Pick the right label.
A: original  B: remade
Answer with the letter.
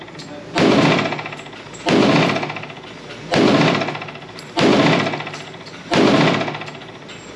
A